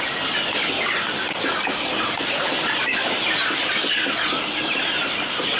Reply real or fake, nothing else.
real